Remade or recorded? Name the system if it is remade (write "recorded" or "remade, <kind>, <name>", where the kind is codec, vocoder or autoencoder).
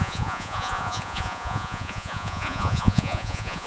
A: remade, vocoder, Vocos